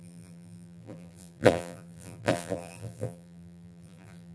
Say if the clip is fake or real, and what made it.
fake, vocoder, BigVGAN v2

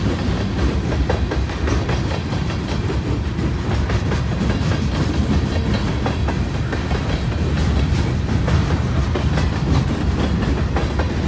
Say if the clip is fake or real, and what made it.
real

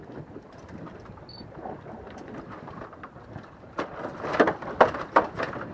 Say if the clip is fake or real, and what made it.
fake, vocoder, BigVGAN v2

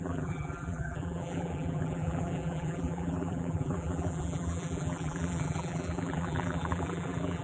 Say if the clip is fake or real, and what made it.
fake, vocoder, BigVGAN v2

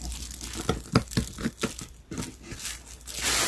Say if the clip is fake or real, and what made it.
real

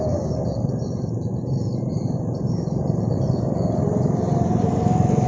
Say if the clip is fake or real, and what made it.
fake, vocoder, BigVGAN v2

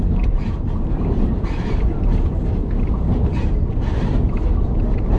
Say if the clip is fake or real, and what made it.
fake, vocoder, BigVGAN v2